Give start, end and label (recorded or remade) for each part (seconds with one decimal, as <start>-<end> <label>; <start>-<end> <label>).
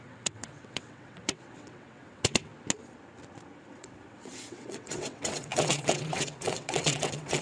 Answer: 0.0-2.5 remade; 2.5-3.7 recorded; 3.7-7.4 remade